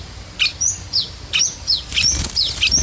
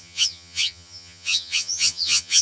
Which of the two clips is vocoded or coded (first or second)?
second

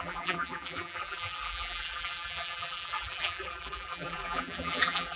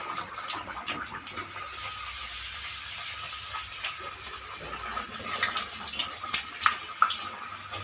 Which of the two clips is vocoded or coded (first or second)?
first